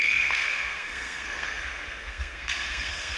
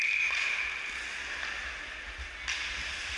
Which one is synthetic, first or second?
first